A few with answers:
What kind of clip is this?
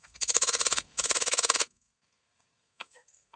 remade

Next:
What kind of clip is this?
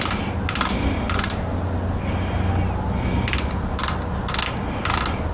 recorded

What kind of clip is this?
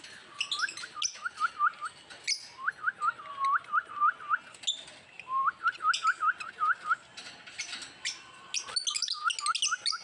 recorded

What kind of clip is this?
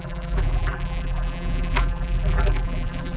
remade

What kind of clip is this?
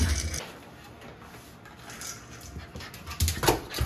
recorded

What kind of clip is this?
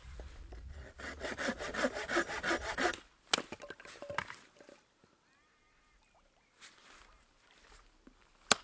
recorded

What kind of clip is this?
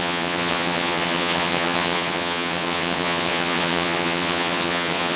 remade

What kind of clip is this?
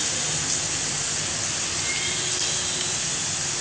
recorded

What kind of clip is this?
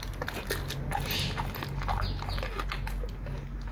recorded